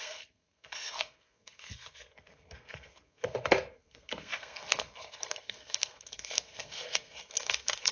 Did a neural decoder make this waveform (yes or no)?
yes